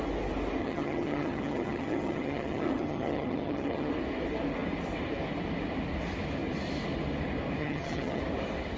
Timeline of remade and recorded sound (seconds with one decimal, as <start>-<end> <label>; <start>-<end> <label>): 0.0-0.6 recorded; 0.6-3.9 remade; 3.9-7.6 recorded; 7.6-8.2 remade; 8.2-8.8 recorded